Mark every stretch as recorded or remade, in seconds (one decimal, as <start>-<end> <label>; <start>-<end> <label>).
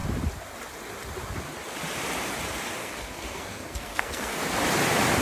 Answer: 0.0-2.8 recorded; 2.8-4.4 remade; 4.4-5.2 recorded